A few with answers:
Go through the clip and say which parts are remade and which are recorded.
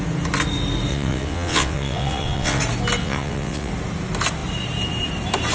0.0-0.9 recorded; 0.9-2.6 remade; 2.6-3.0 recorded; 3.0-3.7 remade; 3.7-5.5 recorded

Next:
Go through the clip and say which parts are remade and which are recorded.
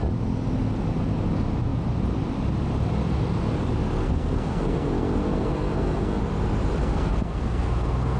0.0-4.0 recorded; 4.0-6.2 remade; 6.2-6.8 recorded; 6.8-8.2 remade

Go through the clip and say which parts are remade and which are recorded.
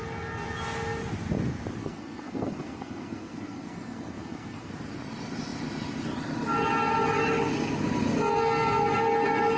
0.0-1.8 recorded; 1.8-4.7 remade; 4.7-9.6 recorded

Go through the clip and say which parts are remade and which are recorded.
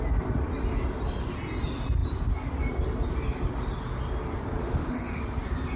0.0-4.6 recorded; 4.6-5.2 remade; 5.2-5.8 recorded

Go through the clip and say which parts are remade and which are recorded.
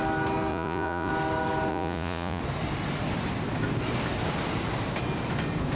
0.0-0.5 recorded; 0.5-1.1 remade; 1.1-1.7 recorded; 1.7-2.4 remade; 2.4-5.8 recorded